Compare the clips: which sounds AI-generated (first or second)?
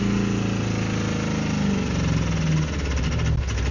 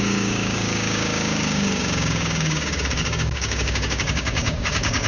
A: second